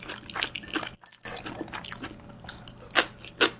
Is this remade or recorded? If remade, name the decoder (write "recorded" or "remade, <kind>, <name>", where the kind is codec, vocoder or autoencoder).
recorded